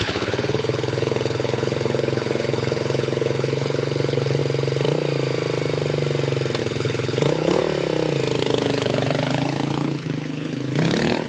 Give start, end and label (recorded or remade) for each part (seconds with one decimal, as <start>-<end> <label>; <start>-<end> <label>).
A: 0.0-4.4 remade; 4.4-6.6 recorded; 6.6-7.6 remade; 7.6-8.4 recorded; 8.4-11.3 remade